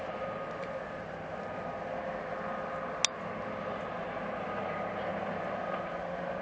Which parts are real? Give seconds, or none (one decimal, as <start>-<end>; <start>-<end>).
0.0-6.4